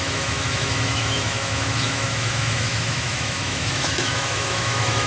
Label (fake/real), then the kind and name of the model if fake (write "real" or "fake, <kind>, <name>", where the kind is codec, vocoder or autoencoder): fake, autoencoder, DAC-VAE